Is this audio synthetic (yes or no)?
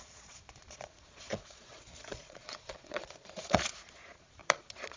yes